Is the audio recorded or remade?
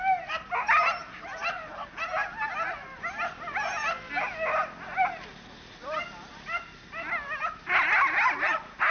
recorded